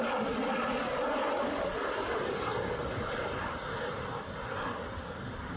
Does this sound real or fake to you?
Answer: real